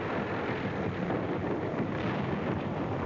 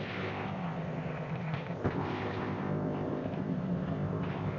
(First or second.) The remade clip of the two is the second